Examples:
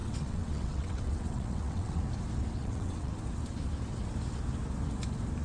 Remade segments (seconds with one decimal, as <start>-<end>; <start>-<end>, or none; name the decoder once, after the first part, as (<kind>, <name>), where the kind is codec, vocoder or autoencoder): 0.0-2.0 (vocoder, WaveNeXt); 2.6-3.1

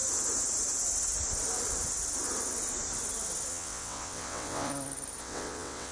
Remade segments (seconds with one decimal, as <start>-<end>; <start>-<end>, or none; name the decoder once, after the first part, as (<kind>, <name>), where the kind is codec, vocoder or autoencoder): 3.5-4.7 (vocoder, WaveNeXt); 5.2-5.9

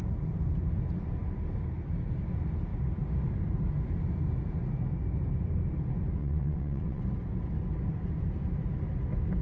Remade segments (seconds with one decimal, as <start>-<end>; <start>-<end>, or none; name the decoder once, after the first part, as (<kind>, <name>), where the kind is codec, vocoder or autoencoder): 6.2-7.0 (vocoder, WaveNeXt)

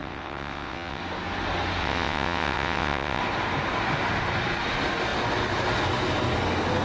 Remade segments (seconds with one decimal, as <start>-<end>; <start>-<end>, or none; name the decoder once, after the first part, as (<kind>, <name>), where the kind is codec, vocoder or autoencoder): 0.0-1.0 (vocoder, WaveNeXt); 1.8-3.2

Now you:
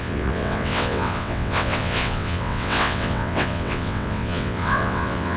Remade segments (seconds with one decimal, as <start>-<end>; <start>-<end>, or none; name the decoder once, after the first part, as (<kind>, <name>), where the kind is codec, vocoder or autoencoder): 0.0-5.4 (vocoder, WaveNeXt)

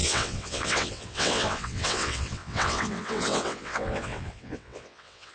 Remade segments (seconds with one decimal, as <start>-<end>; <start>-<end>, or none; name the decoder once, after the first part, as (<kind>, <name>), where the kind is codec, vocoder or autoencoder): 0.0-5.3 (vocoder, WaveNeXt)

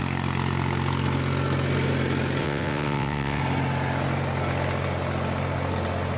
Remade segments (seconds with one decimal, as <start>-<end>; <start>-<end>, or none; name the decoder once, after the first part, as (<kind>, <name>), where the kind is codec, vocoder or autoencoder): 2.4-3.4 (vocoder, WaveNeXt)

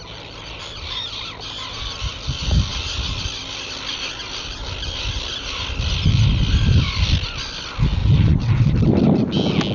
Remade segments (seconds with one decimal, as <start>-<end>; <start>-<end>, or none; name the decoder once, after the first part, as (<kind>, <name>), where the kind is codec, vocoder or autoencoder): 8.0-8.7 (vocoder, WaveNeXt)